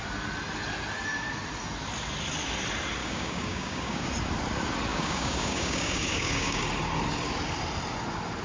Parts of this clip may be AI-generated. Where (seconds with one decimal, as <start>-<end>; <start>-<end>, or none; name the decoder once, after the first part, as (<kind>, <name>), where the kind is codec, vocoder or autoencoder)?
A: 3.0-4.1 (codec, DAC); 4.9-6.6

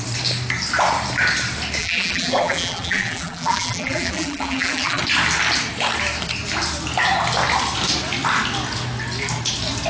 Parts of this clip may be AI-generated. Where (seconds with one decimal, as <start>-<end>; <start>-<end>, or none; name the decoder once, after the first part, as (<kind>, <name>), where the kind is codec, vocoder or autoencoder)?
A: 1.8-5.0 (vocoder, BigVGAN v2)

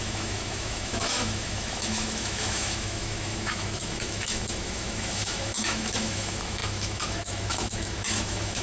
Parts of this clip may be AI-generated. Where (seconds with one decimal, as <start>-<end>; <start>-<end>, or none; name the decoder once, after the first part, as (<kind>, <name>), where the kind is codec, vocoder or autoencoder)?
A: 0.0-8.6 (autoencoder, DAC-VAE)

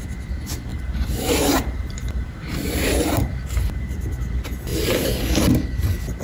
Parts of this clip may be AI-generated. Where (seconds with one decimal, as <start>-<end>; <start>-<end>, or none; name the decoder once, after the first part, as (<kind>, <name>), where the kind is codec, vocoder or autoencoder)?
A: 0.7-4.0 (vocoder, BigVGAN v2); 4.7-5.4

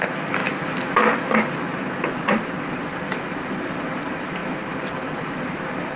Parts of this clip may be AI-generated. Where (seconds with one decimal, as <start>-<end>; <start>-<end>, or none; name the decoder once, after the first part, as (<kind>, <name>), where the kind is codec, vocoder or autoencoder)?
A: 0.0-0.4 (vocoder, BigVGAN v2); 1.6-4.4; 5.2-6.0

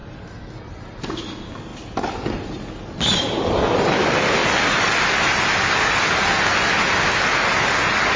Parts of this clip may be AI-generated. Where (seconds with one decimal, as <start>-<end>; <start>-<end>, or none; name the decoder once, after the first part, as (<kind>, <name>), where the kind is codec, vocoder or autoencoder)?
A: none